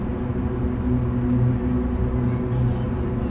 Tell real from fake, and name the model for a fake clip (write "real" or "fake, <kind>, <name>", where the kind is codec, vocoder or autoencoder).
real